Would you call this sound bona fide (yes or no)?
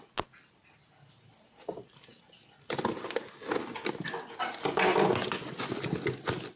yes